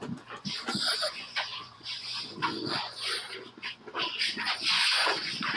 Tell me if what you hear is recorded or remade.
remade